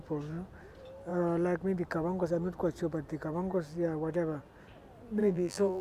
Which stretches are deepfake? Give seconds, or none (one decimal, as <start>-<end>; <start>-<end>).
5.2-5.8